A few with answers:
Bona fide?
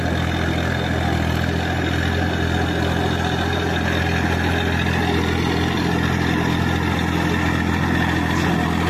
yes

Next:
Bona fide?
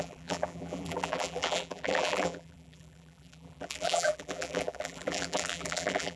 no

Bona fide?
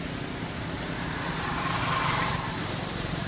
no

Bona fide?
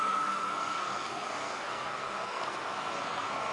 no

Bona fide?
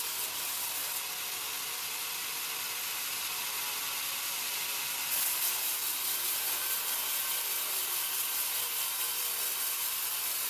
yes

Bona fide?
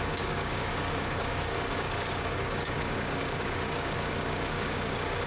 no